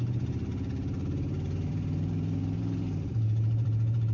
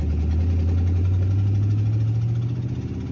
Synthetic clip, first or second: first